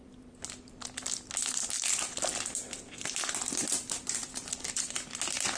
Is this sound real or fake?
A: real